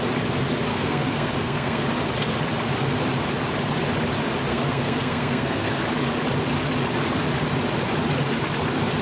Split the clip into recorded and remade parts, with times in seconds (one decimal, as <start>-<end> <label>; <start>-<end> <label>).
0.0-0.7 recorded; 0.7-1.8 remade; 1.8-4.5 recorded; 4.5-5.7 remade; 5.7-9.0 recorded